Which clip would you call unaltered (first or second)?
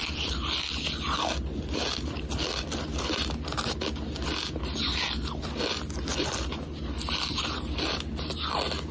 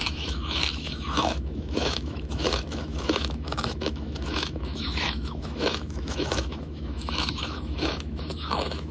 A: first